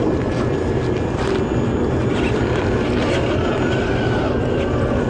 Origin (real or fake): real